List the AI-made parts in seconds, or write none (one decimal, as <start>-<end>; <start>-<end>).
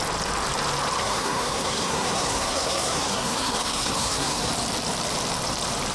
1.0-4.5